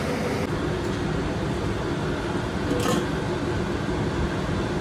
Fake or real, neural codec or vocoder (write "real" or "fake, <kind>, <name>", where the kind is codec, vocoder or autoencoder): real